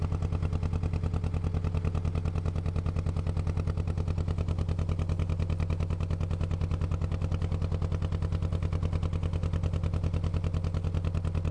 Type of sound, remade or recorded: recorded